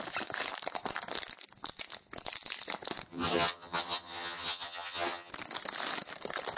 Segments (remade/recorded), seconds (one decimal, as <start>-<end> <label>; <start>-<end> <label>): 0.0-3.1 recorded; 3.1-5.3 remade; 5.3-6.6 recorded